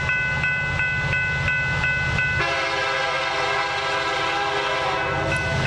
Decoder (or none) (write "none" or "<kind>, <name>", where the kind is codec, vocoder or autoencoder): none